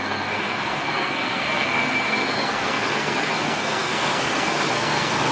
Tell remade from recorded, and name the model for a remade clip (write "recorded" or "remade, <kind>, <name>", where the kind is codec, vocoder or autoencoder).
remade, codec, SNAC